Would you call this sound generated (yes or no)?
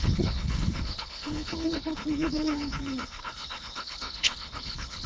yes